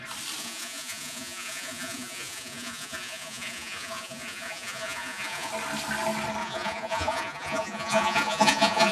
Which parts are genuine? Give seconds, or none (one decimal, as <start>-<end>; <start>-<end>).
0.0-0.4; 5.5-6.4